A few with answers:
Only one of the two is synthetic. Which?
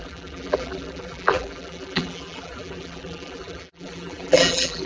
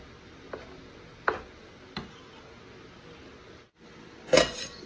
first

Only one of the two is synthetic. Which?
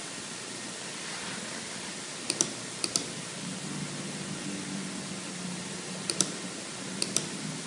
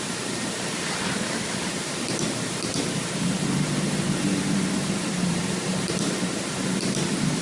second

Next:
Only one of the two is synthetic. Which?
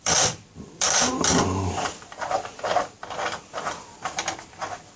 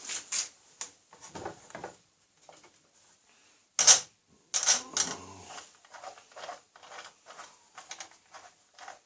first